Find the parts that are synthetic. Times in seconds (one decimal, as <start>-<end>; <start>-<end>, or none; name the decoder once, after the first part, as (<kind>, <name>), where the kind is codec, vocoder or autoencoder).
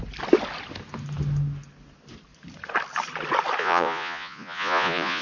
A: 3.6-5.2 (vocoder, Vocos)